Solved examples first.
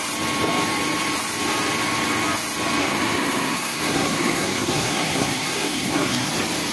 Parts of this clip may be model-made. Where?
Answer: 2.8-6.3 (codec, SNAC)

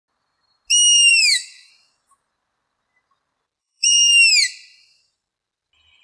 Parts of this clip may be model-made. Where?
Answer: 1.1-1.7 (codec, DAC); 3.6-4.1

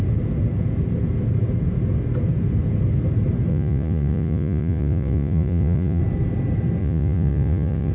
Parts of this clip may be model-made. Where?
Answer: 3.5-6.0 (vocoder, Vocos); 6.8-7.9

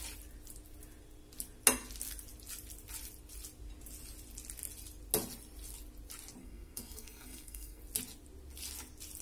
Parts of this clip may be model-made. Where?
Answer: 6.4-7.8 (codec, SNAC)